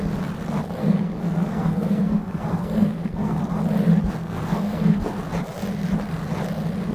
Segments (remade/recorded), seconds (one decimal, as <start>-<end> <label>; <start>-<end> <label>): 0.0-0.8 recorded; 0.8-3.4 remade; 3.4-4.2 recorded; 4.2-5.0 remade; 5.0-6.9 recorded